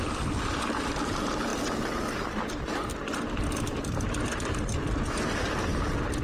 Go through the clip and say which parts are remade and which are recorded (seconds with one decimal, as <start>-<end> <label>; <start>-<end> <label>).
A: 0.0-6.2 recorded